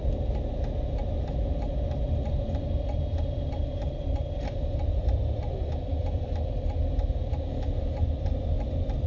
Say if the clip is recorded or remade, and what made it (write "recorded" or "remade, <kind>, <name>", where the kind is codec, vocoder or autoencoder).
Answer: recorded